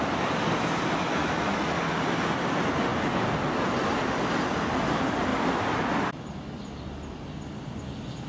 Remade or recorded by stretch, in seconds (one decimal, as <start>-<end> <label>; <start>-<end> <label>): 0.0-1.2 recorded; 1.2-1.7 remade; 1.7-8.3 recorded